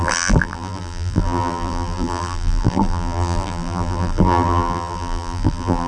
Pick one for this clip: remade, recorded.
remade